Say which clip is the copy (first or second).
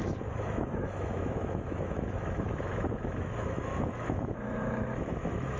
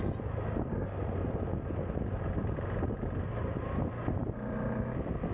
first